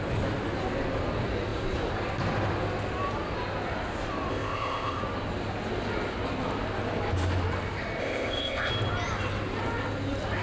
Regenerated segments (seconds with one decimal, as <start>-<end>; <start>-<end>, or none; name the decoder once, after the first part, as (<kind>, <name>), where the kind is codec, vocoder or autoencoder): 4.3-5.0 (codec, ZipCodec); 8.0-8.7